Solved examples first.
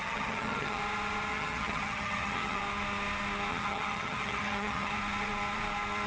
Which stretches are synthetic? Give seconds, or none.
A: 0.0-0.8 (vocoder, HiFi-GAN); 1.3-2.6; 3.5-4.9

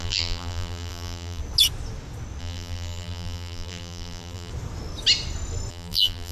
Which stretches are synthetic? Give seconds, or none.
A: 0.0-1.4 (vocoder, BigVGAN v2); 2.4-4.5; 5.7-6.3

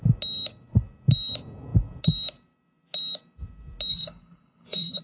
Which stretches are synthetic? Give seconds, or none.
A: 3.9-5.0 (codec, HILCodec)

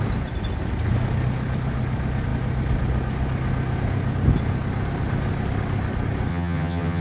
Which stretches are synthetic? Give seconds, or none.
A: 6.3-7.0 (vocoder, HiFi-GAN)